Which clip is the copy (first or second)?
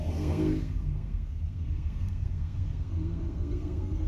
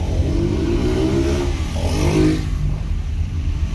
first